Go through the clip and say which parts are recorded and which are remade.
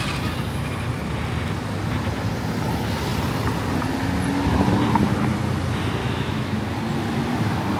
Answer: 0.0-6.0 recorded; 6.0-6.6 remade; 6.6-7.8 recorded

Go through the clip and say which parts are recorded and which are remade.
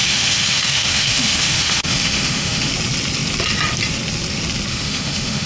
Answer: 0.0-2.7 remade; 2.7-4.7 recorded; 4.7-5.5 remade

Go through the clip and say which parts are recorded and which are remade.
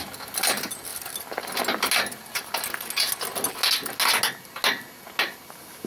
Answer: 0.0-5.9 recorded